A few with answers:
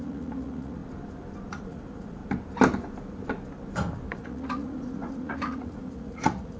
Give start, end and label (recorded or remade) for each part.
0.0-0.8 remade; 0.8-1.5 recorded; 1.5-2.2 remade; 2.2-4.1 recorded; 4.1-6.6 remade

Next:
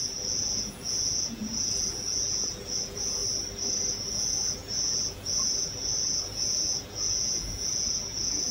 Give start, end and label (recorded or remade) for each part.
0.0-3.2 remade; 3.2-3.9 recorded; 3.9-8.5 remade

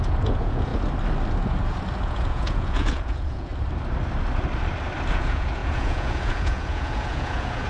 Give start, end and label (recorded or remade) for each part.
0.0-0.7 remade; 0.7-2.0 recorded; 2.0-3.5 remade; 3.5-5.1 recorded; 5.1-7.7 remade

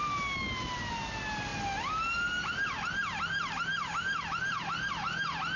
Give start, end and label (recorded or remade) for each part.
0.0-5.6 recorded

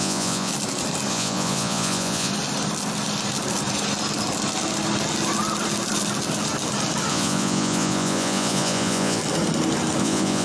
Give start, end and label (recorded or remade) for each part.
0.0-0.5 remade; 0.5-1.1 recorded; 1.1-2.3 remade; 2.3-7.1 recorded; 7.1-9.2 remade; 9.2-10.0 recorded; 10.0-10.4 remade